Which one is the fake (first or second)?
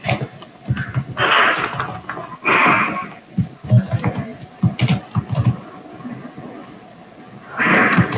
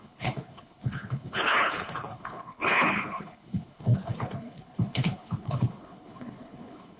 second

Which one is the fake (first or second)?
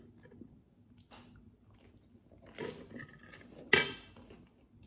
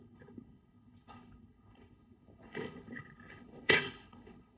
second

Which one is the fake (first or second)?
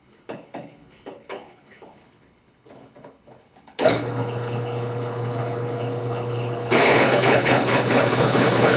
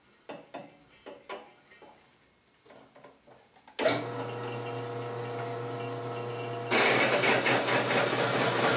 first